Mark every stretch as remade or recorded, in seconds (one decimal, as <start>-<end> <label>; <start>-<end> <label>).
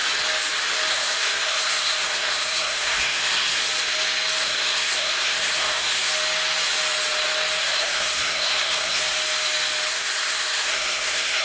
0.0-0.9 recorded; 0.9-3.6 remade; 3.6-4.4 recorded; 4.4-6.1 remade; 6.1-7.6 recorded; 7.6-9.0 remade; 9.0-9.9 recorded; 9.9-11.4 remade